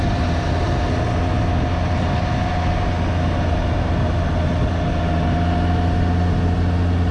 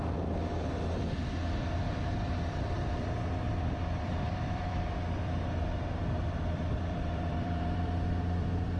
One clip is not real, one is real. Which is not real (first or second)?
second